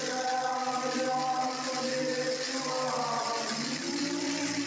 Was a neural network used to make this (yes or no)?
no